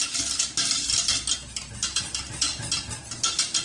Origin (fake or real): real